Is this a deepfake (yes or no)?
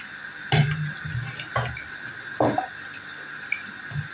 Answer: no